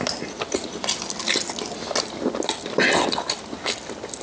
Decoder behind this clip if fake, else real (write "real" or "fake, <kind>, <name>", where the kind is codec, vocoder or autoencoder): real